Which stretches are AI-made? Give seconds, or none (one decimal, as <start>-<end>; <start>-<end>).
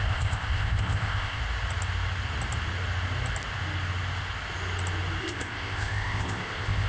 0.0-1.4; 5.2-6.9